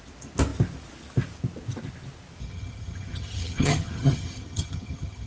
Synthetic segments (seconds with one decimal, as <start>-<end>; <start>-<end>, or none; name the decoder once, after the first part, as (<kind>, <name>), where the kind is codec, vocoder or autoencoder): 2.4-5.3 (vocoder, HiFi-GAN)